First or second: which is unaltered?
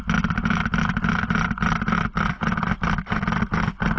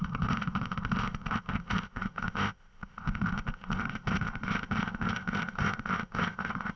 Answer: first